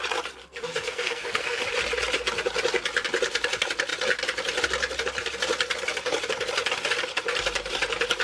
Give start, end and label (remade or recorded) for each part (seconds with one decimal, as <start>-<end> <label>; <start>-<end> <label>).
0.0-0.4 recorded; 0.4-1.6 remade; 1.6-8.2 recorded